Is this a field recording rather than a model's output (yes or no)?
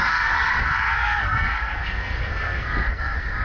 no